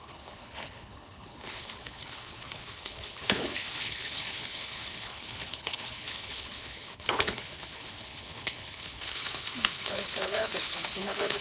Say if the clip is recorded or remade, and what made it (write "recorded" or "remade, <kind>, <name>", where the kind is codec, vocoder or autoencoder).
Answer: remade, codec, HILCodec